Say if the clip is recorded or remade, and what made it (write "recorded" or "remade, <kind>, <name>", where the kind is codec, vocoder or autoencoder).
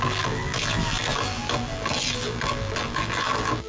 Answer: remade, vocoder, BigVGAN v2